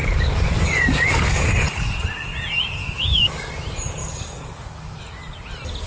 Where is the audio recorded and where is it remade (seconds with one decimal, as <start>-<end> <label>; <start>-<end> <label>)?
0.0-1.5 remade; 1.5-2.8 recorded; 2.8-3.5 remade; 3.5-4.0 recorded; 4.0-5.0 remade; 5.0-5.9 recorded